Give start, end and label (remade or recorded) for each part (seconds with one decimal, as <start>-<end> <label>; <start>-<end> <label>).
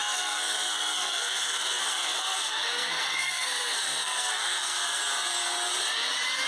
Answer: 0.0-5.0 remade; 5.0-6.5 recorded